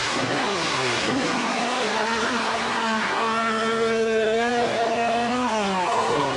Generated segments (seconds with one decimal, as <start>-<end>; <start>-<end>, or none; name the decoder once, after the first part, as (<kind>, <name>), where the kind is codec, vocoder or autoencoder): 0.0-6.4 (codec, SNAC)